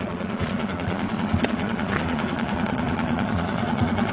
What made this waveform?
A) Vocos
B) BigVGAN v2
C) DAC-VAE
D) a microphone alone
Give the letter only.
A